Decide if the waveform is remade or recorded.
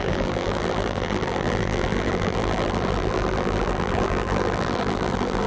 remade